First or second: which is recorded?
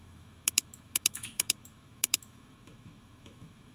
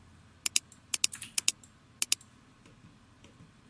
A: second